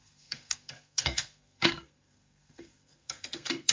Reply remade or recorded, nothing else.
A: remade